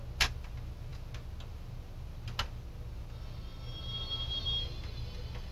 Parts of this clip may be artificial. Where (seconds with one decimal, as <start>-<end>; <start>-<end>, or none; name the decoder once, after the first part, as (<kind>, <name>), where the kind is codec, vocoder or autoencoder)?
none